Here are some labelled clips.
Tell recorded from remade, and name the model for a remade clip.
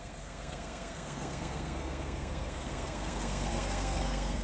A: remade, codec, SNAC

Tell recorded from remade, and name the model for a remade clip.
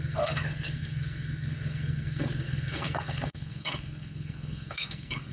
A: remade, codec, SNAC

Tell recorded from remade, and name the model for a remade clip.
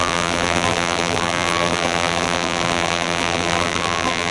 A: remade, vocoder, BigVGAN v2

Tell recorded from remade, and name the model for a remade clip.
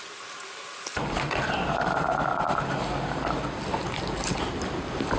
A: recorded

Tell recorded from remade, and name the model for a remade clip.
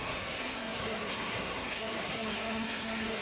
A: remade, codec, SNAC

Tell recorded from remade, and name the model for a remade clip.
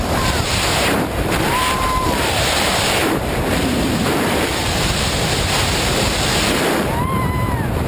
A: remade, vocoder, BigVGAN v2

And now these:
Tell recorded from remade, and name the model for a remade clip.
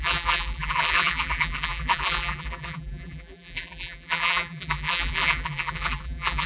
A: remade, vocoder, BigVGAN v2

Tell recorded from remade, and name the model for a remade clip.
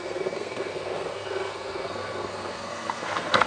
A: remade, codec, SNAC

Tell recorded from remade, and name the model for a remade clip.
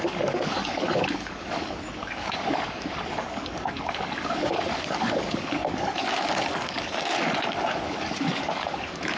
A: remade, codec, DAC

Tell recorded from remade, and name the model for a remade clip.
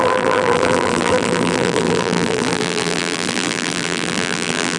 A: remade, vocoder, BigVGAN v2